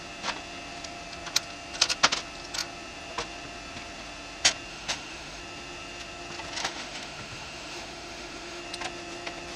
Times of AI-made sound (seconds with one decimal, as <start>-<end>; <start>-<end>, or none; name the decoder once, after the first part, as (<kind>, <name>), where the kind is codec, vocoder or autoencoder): 4.7-5.4 (autoencoder, DAC-VAE); 6.6-8.6